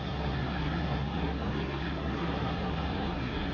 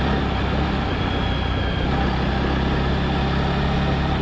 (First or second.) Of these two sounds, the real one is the second